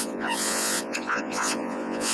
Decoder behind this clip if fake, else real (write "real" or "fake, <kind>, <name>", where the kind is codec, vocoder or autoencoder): fake, vocoder, Vocos